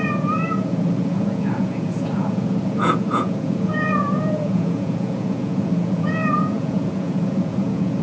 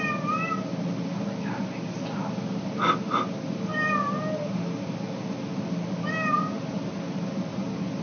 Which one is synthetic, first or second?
first